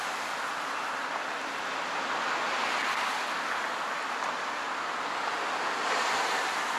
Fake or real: real